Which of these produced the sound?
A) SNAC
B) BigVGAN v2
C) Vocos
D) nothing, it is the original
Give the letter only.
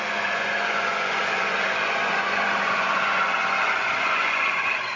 C